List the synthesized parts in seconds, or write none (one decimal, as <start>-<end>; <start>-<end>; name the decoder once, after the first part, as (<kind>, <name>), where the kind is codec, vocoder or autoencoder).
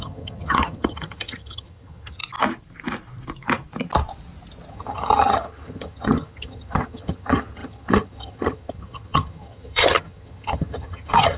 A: 0.0-2.2 (vocoder, HiFi-GAN); 4.7-11.4